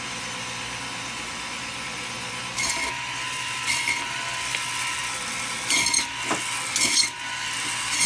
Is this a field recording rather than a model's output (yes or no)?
yes